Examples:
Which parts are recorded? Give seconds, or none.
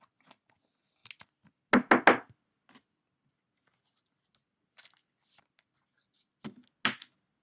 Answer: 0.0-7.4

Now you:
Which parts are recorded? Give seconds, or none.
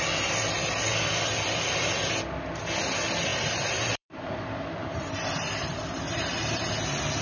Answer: 0.0-3.3; 6.7-7.2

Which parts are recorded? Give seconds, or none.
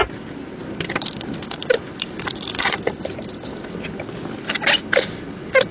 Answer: 0.0-0.6; 3.6-5.7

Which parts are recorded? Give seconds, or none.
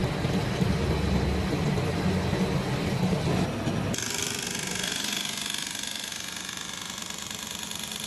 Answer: 0.0-8.1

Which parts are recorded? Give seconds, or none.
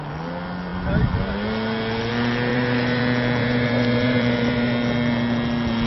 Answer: 0.0-2.5; 3.0-3.4; 4.7-5.9